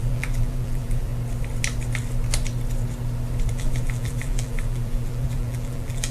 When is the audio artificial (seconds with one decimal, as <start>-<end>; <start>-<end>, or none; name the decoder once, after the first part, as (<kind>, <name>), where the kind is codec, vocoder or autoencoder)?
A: 0.0-1.1 (vocoder, BigVGAN v2); 3.5-6.1